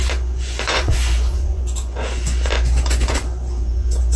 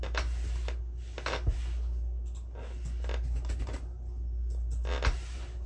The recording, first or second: second